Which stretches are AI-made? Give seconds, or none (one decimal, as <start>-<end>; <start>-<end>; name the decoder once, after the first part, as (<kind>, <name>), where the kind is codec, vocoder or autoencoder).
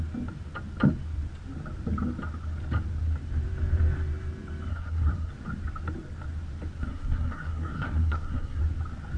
4.7-5.3 (codec, SNAC); 6.8-8.6